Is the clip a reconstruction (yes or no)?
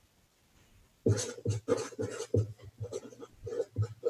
no